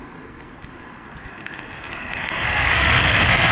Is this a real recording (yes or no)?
no